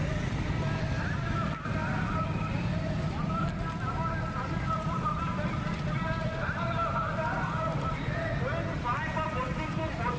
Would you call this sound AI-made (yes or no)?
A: no